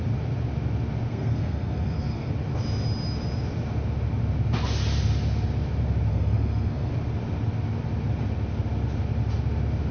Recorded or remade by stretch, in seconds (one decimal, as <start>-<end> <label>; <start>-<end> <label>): 0.0-1.1 recorded; 1.1-2.3 remade; 2.3-6.1 recorded; 6.1-6.9 remade; 6.9-9.9 recorded